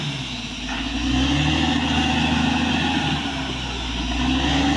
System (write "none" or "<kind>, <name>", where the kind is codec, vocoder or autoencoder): none